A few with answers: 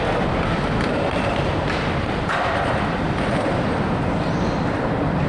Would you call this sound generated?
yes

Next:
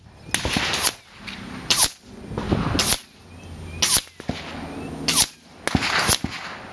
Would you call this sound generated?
no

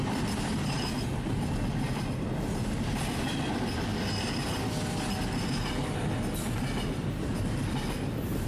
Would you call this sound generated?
no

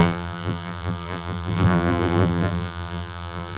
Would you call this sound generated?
yes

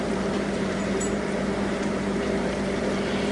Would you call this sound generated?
yes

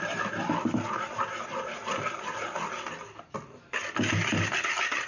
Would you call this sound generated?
no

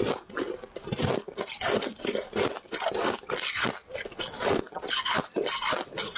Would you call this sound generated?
no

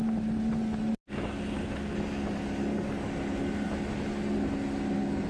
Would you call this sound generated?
no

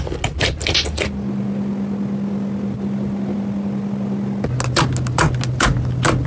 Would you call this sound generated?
no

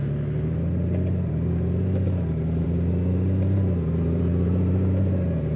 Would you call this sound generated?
yes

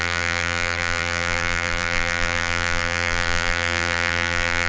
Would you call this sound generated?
yes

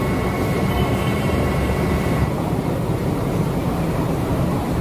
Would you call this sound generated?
yes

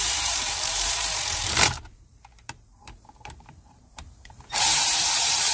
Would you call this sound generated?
yes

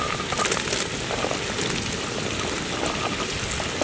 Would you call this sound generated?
no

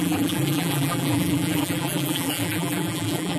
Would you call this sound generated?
yes